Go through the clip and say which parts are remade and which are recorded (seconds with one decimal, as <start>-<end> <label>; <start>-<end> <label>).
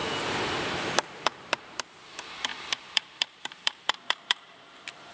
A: 0.0-0.6 recorded; 0.6-5.1 remade